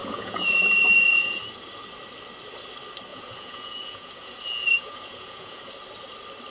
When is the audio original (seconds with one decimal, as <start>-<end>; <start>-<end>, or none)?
1.4-3.1; 5.7-6.5